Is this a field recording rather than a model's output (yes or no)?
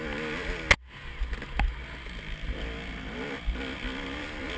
yes